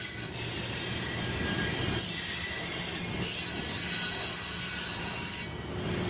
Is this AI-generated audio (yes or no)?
no